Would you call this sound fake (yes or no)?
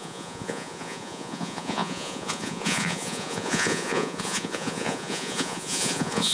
yes